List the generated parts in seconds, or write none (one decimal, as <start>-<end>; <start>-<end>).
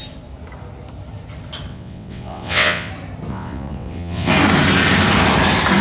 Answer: 1.7-2.9; 3.3-4.3